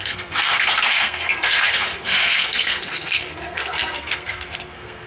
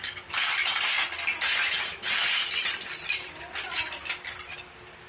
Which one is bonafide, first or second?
second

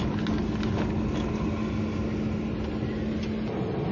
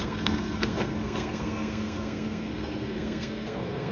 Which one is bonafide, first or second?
first